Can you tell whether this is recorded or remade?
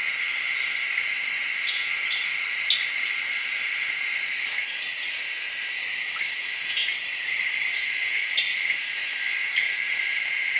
recorded